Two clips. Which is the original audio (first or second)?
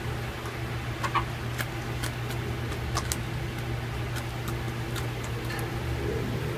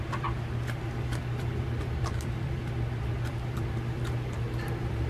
first